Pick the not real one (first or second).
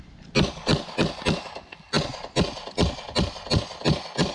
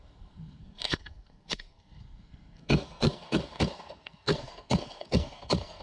second